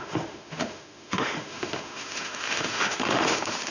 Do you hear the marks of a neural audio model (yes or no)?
yes